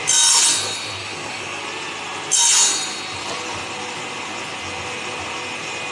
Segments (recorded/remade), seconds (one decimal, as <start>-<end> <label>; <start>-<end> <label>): 0.0-1.0 recorded; 1.0-1.6 remade; 1.6-5.9 recorded